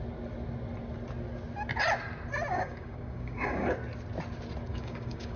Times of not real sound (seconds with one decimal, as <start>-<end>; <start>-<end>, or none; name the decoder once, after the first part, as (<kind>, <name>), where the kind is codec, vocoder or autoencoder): 2.5-3.7 (codec, DAC); 4.7-5.4